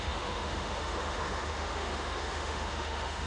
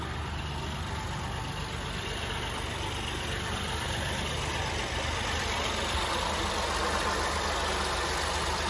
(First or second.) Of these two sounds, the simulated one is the first